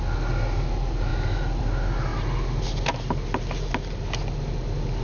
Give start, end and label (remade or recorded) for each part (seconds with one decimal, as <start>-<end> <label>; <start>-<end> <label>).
0.0-5.0 recorded